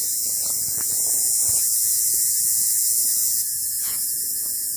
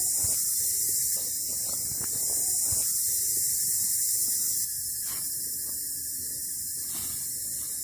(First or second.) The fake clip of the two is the first